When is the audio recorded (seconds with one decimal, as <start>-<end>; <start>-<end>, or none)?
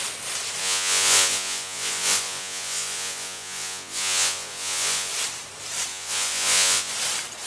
0.0-0.6; 5.1-5.9; 6.9-7.5